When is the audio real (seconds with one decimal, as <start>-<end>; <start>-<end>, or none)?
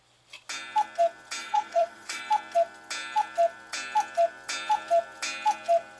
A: 0.0-1.4; 2.2-6.0